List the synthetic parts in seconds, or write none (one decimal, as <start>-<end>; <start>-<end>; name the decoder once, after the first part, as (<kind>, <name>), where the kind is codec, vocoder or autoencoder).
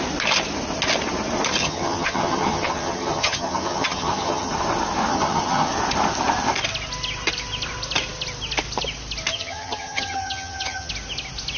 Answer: 1.6-4.5 (vocoder, HiFi-GAN); 5.1-5.7; 9.3-10.9